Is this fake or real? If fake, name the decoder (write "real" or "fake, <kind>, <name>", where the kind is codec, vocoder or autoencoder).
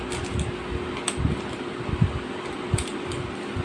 real